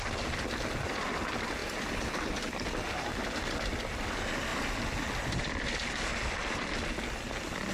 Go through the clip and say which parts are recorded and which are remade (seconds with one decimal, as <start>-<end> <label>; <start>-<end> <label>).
0.0-7.7 recorded

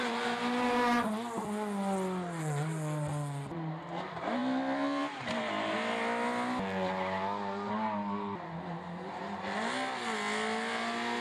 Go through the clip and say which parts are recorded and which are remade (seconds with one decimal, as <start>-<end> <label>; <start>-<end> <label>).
0.0-11.2 recorded

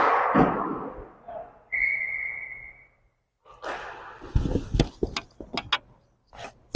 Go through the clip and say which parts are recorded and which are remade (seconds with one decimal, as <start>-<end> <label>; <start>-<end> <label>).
0.0-6.8 recorded

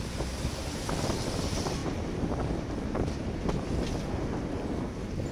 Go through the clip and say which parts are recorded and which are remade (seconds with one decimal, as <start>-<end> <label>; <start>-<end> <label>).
0.0-5.3 recorded